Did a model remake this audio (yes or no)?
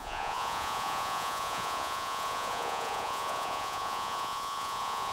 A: yes